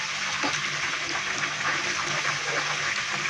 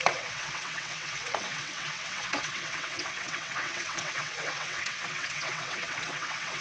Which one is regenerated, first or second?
second